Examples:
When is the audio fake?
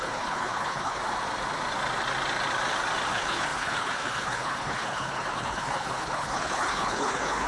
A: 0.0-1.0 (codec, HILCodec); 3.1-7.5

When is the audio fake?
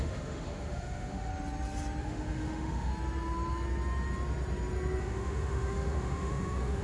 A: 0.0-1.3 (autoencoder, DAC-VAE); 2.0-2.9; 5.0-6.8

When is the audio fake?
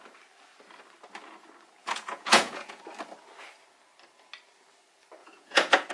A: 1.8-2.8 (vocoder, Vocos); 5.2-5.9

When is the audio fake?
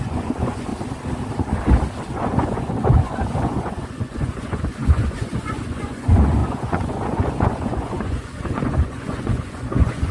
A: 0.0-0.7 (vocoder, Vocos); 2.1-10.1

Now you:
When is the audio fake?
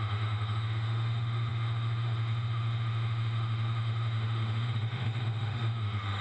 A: 0.0-6.2 (autoencoder, DAC-VAE)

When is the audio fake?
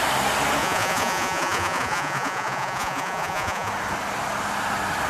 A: 0.6-3.7 (vocoder, Vocos)